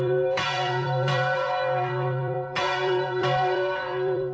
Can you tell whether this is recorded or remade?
remade